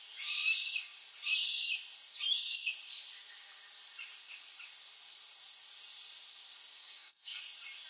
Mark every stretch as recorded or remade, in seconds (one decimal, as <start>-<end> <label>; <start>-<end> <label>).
0.0-6.7 recorded; 6.7-7.4 remade; 7.4-7.9 recorded